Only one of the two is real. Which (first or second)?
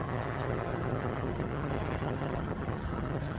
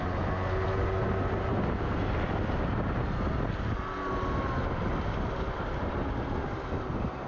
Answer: second